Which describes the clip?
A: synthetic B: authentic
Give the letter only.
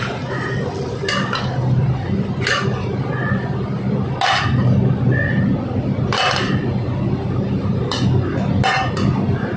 B